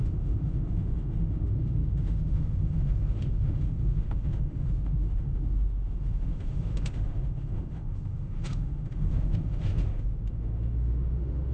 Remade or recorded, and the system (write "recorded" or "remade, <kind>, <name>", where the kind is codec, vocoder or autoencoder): remade, autoencoder, DAC-VAE